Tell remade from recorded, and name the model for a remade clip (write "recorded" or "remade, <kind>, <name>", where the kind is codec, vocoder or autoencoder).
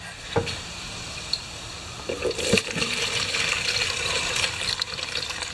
remade, vocoder, BigVGAN v2